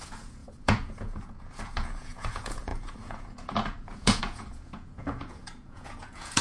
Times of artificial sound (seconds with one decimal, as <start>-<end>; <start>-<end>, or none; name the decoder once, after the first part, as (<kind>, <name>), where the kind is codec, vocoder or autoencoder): 0.0-6.4 (vocoder, Vocos)

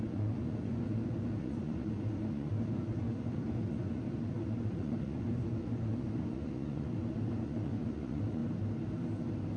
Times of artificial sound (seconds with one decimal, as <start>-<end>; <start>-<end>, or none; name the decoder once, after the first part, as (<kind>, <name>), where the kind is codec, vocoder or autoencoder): 0.0-8.4 (vocoder, Vocos)